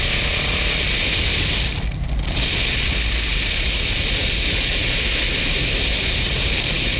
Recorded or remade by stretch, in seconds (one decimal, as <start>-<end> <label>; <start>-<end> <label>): 0.0-7.0 recorded